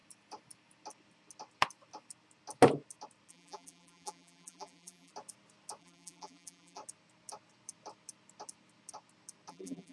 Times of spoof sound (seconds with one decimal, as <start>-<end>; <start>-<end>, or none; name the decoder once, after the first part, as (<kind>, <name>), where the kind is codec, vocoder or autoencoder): 3.3-5.1 (vocoder, BigVGAN v2); 5.8-6.8; 9.5-9.9